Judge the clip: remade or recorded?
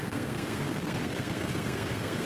remade